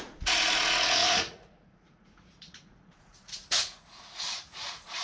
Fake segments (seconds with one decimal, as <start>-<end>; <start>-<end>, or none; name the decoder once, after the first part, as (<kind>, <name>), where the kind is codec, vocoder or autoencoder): 0.0-5.0 (vocoder, Vocos)